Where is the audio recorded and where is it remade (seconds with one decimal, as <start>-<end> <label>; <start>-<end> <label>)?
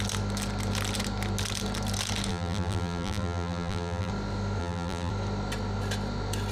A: 0.0-2.3 recorded; 2.3-4.1 remade; 4.1-4.6 recorded; 4.6-5.1 remade; 5.1-6.5 recorded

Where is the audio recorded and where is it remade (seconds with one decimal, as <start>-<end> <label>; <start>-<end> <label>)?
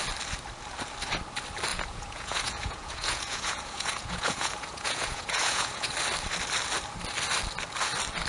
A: 0.0-1.7 recorded; 1.7-5.9 remade; 5.9-8.3 recorded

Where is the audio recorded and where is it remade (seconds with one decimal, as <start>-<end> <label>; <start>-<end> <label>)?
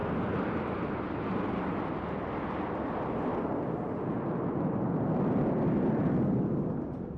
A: 0.0-2.4 recorded; 2.4-3.3 remade; 3.3-6.4 recorded; 6.4-7.2 remade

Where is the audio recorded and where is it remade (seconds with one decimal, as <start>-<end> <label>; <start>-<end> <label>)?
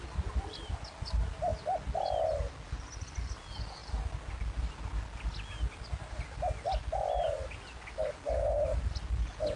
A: 0.0-9.6 recorded